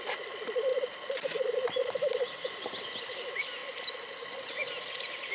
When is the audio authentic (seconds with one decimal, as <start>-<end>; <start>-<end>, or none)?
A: 0.0-5.3